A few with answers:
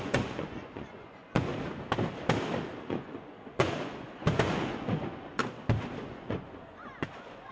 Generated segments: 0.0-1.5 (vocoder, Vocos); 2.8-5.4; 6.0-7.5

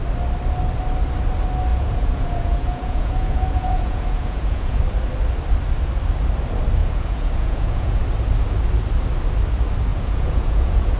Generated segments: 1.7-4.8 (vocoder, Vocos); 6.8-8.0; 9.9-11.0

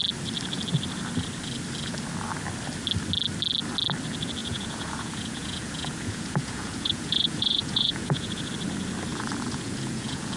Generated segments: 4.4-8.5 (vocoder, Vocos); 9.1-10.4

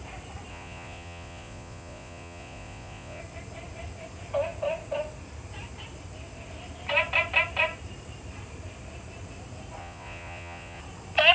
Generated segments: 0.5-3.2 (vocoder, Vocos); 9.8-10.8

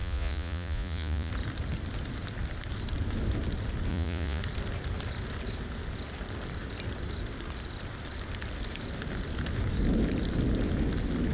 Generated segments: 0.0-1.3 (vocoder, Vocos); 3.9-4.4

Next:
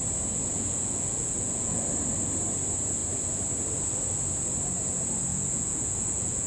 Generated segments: 0.5-1.8 (vocoder, Vocos); 5.3-6.5